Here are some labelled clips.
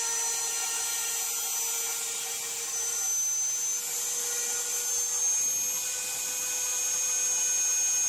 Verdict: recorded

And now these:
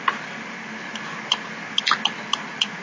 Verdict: recorded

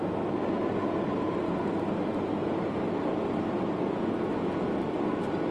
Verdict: recorded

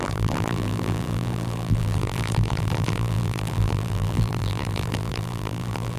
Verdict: remade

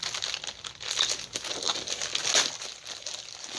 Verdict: recorded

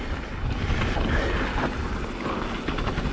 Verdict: recorded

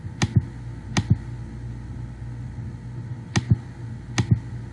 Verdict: recorded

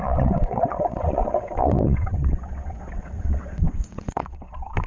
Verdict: remade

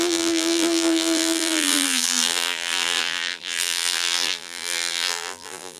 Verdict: remade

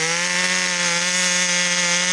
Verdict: recorded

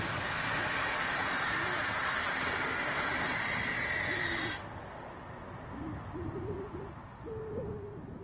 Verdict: recorded